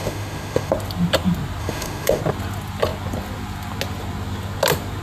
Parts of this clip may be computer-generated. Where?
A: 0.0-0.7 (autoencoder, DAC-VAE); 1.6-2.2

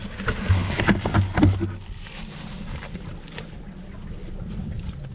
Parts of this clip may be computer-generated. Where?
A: none

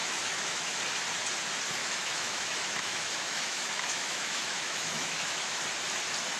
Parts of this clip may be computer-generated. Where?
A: 0.0-0.8 (autoencoder, DAC-VAE); 1.8-5.6

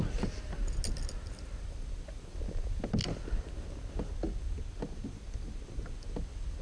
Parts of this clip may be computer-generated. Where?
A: none

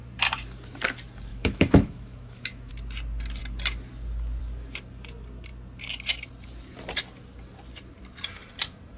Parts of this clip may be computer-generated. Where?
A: 1.3-2.7 (autoencoder, DAC-VAE)

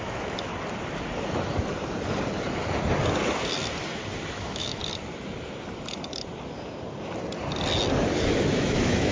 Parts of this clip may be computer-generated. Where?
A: 0.0-0.5 (autoencoder, DAC-VAE); 4.3-4.8; 8.2-9.1

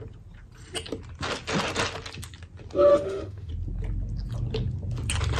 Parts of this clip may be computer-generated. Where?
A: 2.9-3.5 (autoencoder, DAC-VAE)